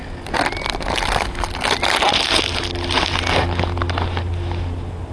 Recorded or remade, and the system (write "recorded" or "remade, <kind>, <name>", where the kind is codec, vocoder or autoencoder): recorded